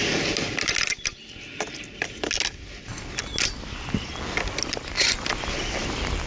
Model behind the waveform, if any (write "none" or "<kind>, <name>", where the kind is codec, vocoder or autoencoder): none